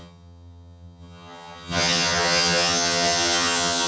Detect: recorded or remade remade